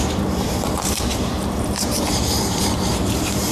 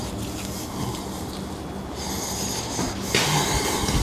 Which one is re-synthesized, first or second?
first